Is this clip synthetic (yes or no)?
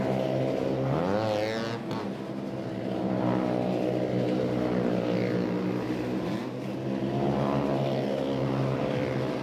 no